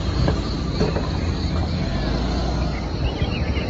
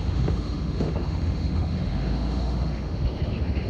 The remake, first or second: second